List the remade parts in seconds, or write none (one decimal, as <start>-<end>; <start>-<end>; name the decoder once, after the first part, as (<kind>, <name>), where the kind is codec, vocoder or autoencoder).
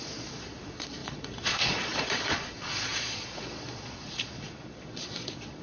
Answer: 0.0-5.6 (vocoder, Vocos)